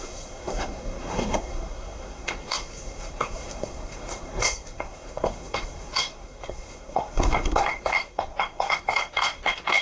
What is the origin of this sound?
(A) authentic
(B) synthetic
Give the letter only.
B